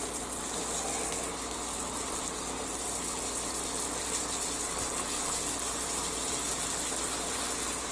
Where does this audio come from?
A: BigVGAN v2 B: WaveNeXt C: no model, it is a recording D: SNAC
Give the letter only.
C